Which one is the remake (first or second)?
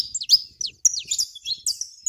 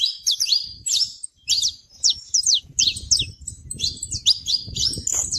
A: second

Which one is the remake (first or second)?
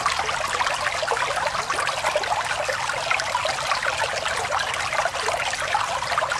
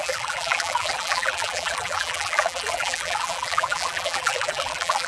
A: second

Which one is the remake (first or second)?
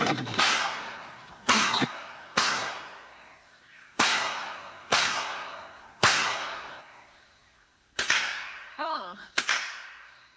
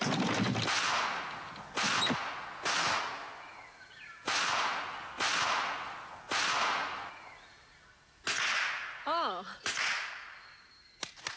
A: first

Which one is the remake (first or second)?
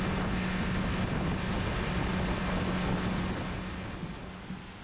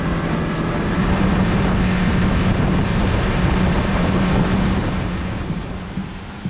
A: second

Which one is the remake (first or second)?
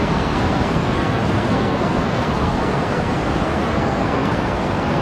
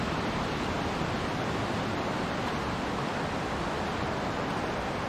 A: first